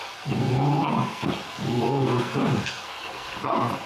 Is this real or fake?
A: fake